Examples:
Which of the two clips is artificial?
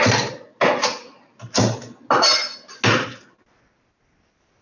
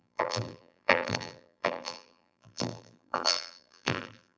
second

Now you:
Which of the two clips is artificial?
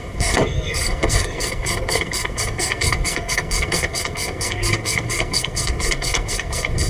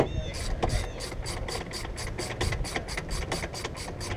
first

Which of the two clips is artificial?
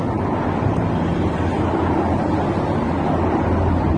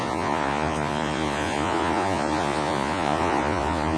second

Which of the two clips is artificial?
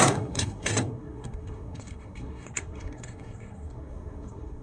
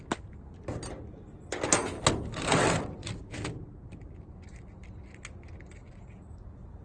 first